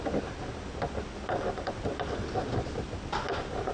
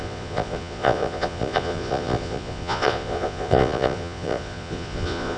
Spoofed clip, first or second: second